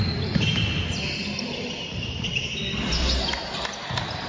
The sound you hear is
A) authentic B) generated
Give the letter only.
A